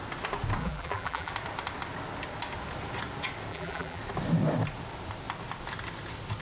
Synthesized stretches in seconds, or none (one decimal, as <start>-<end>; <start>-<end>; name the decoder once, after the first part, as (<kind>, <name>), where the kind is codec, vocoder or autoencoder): 0.6-1.3 (vocoder, BigVGAN v2); 3.5-4.0